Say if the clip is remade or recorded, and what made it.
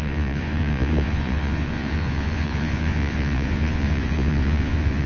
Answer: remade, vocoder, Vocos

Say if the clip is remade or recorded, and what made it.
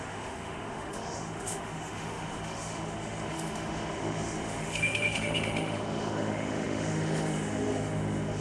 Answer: remade, autoencoder, DAC-VAE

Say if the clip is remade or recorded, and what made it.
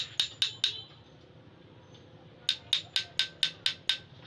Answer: recorded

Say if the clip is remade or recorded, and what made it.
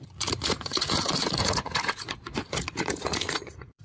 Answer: remade, vocoder, Vocos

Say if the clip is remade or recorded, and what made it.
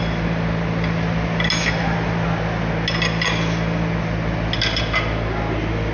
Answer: recorded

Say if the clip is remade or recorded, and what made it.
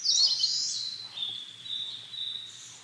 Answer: remade, vocoder, BigVGAN v2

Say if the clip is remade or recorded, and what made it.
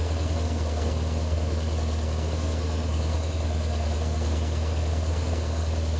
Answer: remade, codec, SNAC